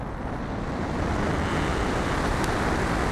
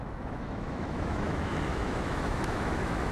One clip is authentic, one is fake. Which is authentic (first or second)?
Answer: first